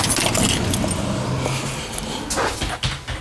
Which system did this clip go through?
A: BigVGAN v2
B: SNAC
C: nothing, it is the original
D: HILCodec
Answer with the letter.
C